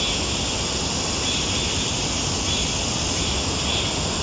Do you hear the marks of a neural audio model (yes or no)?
no